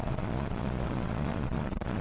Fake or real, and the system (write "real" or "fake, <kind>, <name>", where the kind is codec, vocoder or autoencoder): fake, vocoder, Vocos